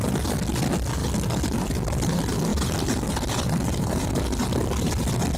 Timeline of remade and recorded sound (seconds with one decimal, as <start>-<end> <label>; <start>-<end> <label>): 0.0-1.0 recorded; 1.0-1.7 remade; 1.7-2.5 recorded; 2.5-4.0 remade; 4.0-5.4 recorded